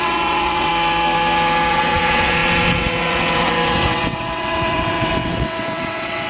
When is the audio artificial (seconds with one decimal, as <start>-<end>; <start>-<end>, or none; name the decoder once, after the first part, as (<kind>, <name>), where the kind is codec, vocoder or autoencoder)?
0.0-0.7 (vocoder, WaveNeXt); 1.7-6.3